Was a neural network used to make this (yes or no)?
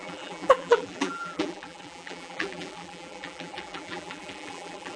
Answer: yes